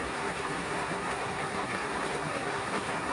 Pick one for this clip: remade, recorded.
remade